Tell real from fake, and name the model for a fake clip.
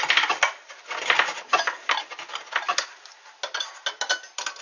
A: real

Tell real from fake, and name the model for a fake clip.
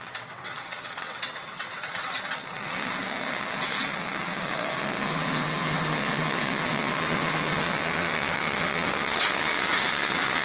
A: fake, vocoder, WaveNeXt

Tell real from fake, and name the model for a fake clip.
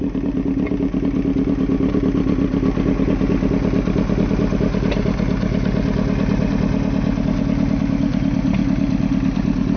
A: real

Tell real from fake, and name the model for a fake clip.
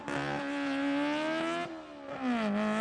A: real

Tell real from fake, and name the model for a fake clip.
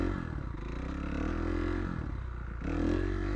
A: real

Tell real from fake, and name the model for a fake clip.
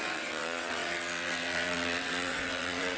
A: fake, vocoder, WaveNeXt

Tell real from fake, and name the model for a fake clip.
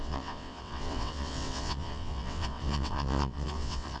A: fake, vocoder, WaveNeXt